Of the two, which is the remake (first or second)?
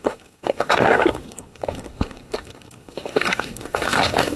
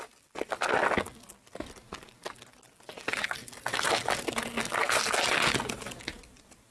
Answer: first